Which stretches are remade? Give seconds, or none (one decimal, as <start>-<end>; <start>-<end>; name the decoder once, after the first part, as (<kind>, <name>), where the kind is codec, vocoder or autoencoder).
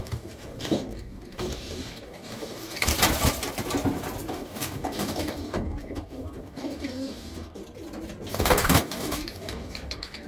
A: 0.0-2.9 (codec, DAC); 4.3-7.6; 8.3-10.3